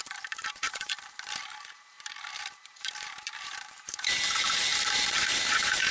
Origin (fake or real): fake